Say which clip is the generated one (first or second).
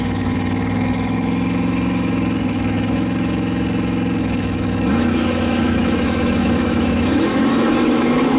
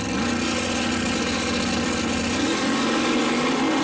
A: first